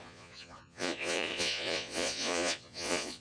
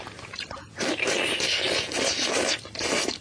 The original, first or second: second